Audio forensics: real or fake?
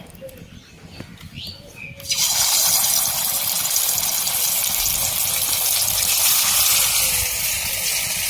real